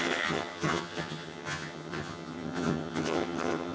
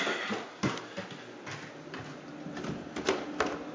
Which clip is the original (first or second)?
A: second